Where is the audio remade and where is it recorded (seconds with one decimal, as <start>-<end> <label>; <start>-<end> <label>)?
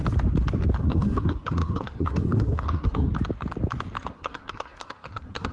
0.0-0.8 recorded; 0.8-3.1 remade; 3.1-4.1 recorded; 4.1-5.5 remade